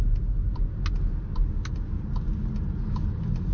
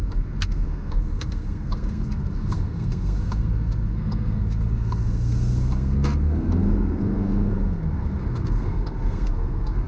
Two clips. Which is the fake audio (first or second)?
second